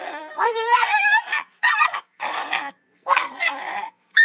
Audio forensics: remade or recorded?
remade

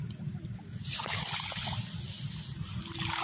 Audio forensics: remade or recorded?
recorded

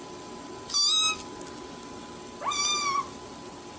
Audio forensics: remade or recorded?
recorded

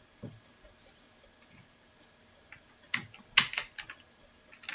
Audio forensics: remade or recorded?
recorded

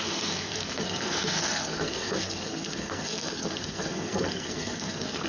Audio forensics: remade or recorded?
remade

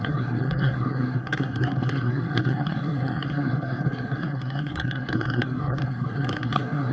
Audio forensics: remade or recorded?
remade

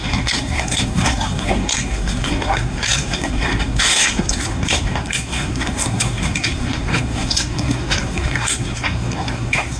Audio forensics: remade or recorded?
remade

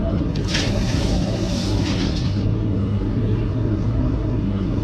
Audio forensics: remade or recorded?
remade